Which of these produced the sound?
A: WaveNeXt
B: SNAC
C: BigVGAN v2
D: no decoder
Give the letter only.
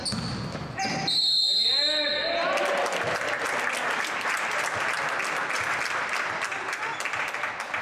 D